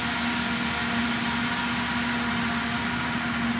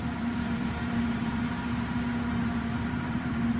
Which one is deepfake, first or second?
second